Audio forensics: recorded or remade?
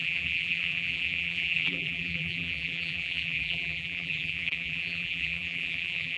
remade